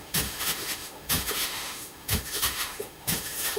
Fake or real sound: fake